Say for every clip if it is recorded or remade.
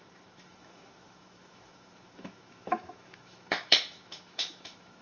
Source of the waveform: remade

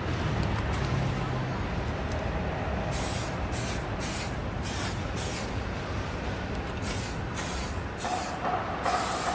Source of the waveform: recorded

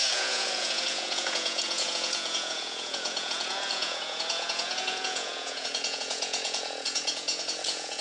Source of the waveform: remade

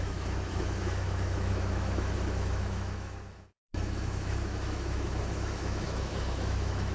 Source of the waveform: remade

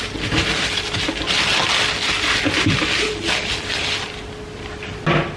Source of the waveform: recorded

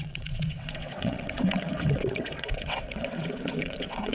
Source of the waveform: remade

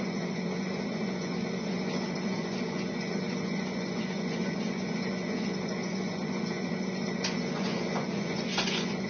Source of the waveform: remade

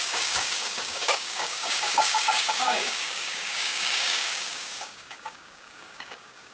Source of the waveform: remade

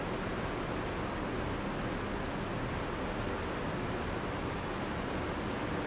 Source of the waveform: recorded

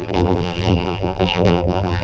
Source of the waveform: remade